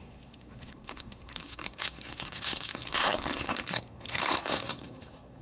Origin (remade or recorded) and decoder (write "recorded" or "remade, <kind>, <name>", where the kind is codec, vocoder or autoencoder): remade, codec, SNAC